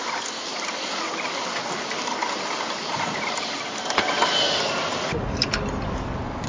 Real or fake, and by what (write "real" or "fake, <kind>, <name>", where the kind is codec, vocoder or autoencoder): real